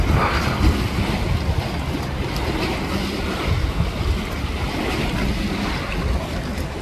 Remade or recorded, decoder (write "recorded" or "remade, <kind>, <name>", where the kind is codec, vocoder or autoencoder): recorded